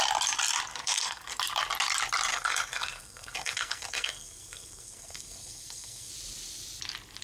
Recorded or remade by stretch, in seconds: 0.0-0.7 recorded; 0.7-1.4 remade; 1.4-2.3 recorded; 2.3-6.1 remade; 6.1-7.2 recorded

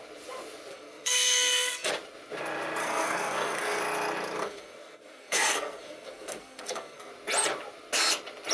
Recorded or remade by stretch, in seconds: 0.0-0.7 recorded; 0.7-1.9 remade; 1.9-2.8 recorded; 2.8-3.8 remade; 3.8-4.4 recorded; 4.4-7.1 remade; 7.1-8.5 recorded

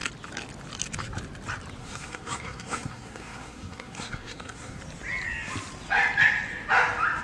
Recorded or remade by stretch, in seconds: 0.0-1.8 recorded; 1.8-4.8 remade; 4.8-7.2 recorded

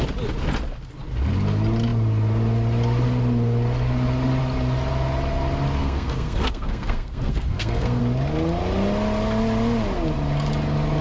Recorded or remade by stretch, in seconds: 0.0-5.8 recorded; 5.8-8.0 remade; 8.0-11.0 recorded

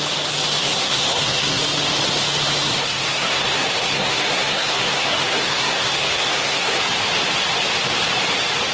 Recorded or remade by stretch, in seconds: 0.0-0.6 recorded; 0.6-1.6 remade; 1.6-2.6 recorded; 2.6-6.8 remade; 6.8-8.7 recorded